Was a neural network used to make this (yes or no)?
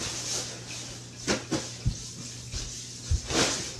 no